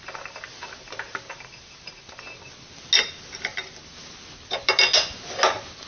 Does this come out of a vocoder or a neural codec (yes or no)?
no